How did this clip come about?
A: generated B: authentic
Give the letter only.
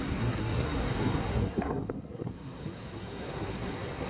A